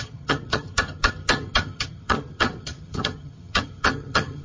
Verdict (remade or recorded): remade